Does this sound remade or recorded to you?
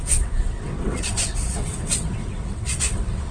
remade